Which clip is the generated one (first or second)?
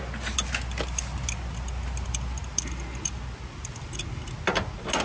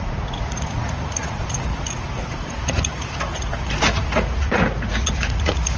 second